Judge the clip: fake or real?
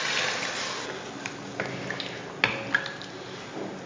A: real